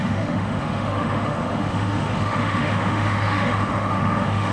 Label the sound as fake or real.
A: fake